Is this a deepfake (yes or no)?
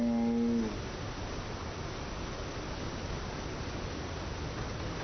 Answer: no